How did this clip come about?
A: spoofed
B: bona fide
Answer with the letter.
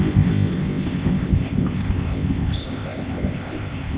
A